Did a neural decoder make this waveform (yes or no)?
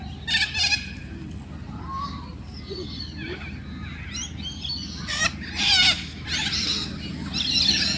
no